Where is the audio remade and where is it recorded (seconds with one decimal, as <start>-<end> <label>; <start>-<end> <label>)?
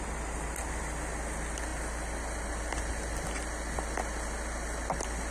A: 0.0-5.3 recorded